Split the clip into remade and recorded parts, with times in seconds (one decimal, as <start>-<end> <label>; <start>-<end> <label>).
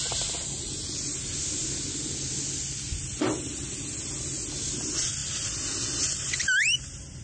0.0-7.2 recorded